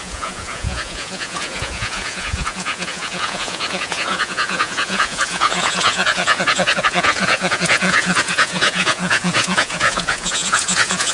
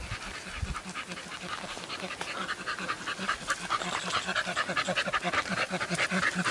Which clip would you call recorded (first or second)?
second